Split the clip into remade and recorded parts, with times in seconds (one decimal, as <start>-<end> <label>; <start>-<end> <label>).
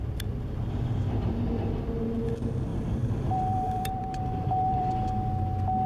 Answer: 0.0-2.7 recorded; 2.7-4.9 remade; 4.9-5.9 recorded